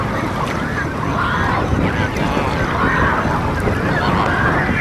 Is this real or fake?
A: real